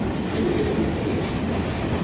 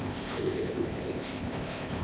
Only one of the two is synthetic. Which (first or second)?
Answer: second